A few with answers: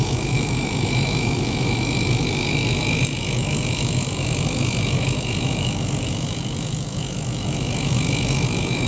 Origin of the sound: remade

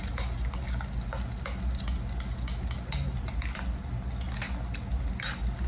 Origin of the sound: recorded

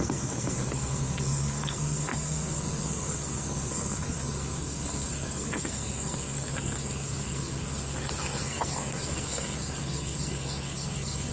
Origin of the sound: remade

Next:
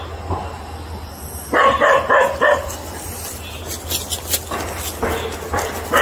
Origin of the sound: recorded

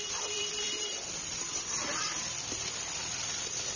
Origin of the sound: remade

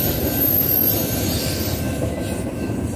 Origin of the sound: recorded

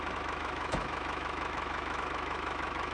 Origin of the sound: remade